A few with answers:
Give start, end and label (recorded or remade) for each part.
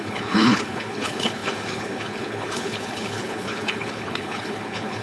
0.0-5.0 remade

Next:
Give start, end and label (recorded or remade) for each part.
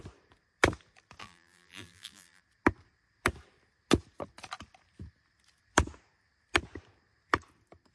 0.0-1.2 recorded; 1.2-2.4 remade; 2.4-7.9 recorded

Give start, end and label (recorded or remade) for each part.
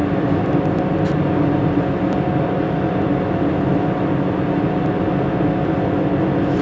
0.0-6.6 recorded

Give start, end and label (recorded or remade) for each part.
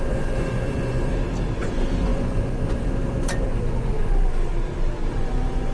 0.0-1.1 remade; 1.1-1.6 recorded; 1.6-4.5 remade; 4.5-5.1 recorded; 5.1-5.7 remade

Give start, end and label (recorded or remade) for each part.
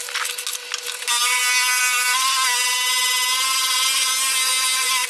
0.0-5.1 recorded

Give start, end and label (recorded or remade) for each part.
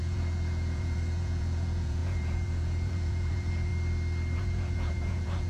0.0-3.7 remade; 3.7-4.4 recorded; 4.4-5.5 remade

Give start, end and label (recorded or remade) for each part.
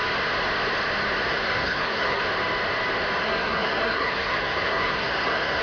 0.0-1.3 recorded; 1.3-2.2 remade; 2.2-3.2 recorded; 3.2-5.6 remade